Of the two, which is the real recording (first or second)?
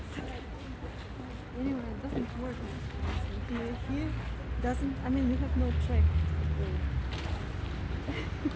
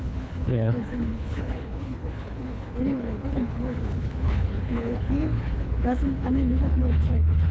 first